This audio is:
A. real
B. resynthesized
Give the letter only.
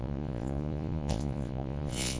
B